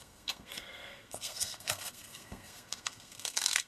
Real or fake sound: fake